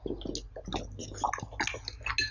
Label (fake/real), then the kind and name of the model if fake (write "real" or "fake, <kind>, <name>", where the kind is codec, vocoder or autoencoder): real